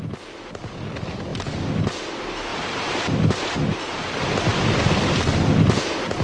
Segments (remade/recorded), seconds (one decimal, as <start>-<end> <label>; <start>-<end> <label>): 0.0-2.5 recorded; 2.5-3.3 remade; 3.3-4.5 recorded; 4.5-5.3 remade; 5.3-6.2 recorded

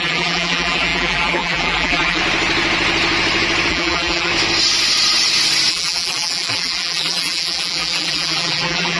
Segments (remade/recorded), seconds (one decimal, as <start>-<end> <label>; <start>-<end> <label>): 0.0-2.2 remade; 2.2-3.7 recorded; 3.7-4.3 remade; 4.3-5.7 recorded; 5.7-9.0 remade

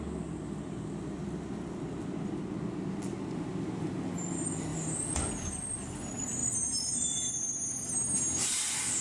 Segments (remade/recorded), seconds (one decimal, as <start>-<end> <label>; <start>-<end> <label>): 0.0-4.7 recorded; 4.7-5.2 remade; 5.2-6.4 recorded; 6.4-7.3 remade; 7.3-9.0 recorded

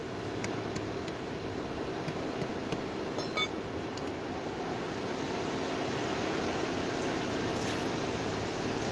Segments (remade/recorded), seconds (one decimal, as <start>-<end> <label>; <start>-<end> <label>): 0.0-7.8 recorded; 7.8-8.9 remade

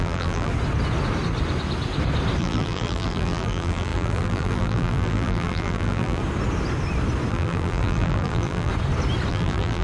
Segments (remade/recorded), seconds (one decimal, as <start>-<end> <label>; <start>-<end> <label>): 0.0-0.5 remade; 0.5-2.4 recorded; 2.4-6.2 remade; 6.2-7.3 recorded; 7.3-8.7 remade; 8.7-9.3 recorded; 9.3-9.8 remade